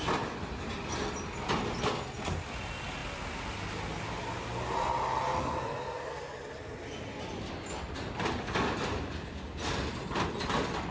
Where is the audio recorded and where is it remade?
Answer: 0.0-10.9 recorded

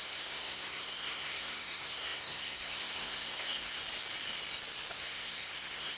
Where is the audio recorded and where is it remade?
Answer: 0.0-3.8 remade; 3.8-5.0 recorded; 5.0-6.0 remade

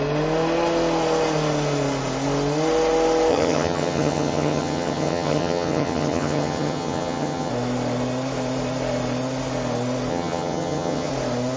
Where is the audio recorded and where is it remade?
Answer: 0.0-3.3 recorded; 3.3-7.5 remade; 7.5-10.1 recorded; 10.1-11.1 remade; 11.1-11.6 recorded

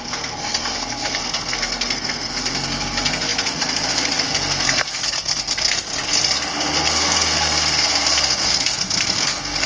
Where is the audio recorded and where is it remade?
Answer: 0.0-5.9 remade; 5.9-6.5 recorded; 6.5-9.7 remade

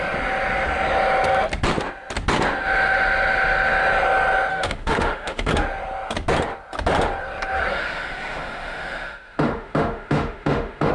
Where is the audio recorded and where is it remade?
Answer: 0.0-4.5 recorded; 4.5-5.5 remade; 5.5-7.7 recorded; 7.7-10.9 remade